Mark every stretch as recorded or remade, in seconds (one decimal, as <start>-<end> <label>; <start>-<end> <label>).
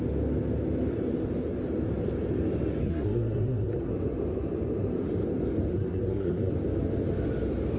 0.0-2.8 recorded; 2.8-3.9 remade; 3.9-5.7 recorded; 5.7-6.5 remade; 6.5-7.8 recorded